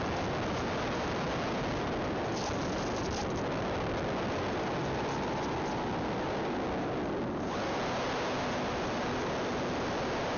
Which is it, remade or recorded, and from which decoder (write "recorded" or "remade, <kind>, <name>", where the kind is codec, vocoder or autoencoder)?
recorded